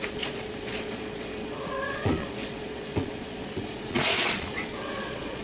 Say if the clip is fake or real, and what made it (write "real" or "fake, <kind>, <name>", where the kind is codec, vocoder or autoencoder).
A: fake, vocoder, Vocos